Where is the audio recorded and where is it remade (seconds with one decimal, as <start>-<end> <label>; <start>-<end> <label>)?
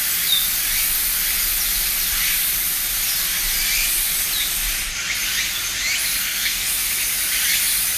0.0-6.2 recorded; 6.2-6.9 remade; 6.9-8.0 recorded